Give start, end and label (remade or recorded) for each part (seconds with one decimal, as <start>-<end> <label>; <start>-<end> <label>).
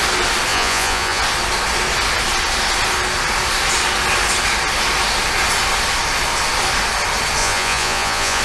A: 0.0-0.5 recorded; 0.5-1.2 remade; 1.2-7.4 recorded; 7.4-8.4 remade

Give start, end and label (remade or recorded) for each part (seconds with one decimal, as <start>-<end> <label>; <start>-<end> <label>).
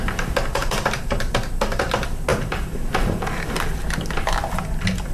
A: 0.0-0.6 recorded; 0.6-1.2 remade; 1.2-2.3 recorded; 2.3-3.5 remade; 3.5-5.1 recorded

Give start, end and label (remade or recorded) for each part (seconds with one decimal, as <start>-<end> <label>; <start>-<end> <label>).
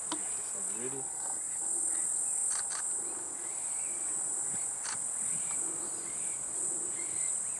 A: 0.0-7.6 recorded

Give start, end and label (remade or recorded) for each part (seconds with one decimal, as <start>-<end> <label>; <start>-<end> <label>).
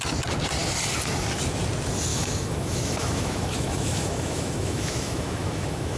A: 0.0-2.1 recorded; 2.1-6.0 remade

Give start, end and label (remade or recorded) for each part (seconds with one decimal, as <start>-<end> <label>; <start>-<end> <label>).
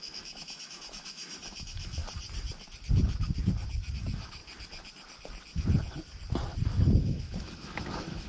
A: 0.0-2.0 remade; 2.0-3.9 recorded; 3.9-4.4 remade; 4.4-7.0 recorded; 7.0-8.3 remade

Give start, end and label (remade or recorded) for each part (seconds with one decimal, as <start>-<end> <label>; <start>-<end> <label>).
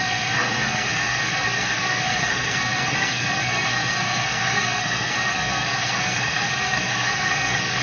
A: 0.0-7.8 remade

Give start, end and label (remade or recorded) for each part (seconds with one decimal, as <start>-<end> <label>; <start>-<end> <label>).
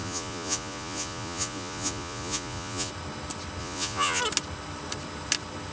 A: 0.0-2.9 remade; 2.9-3.6 recorded; 3.6-4.2 remade; 4.2-5.7 recorded